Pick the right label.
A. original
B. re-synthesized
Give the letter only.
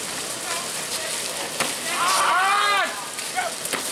A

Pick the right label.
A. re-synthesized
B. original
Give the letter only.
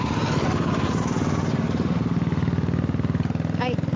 B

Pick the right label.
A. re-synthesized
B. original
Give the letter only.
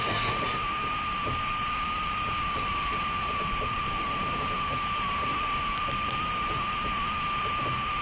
B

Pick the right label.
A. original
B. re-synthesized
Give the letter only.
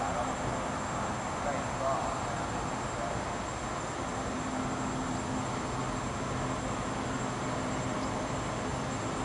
A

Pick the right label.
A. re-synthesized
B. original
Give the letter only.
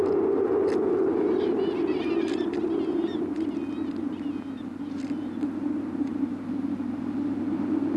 B